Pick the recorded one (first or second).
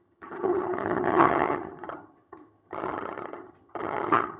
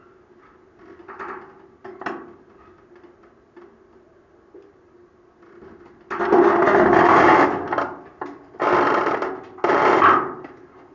second